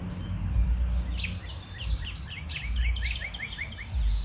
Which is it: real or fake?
real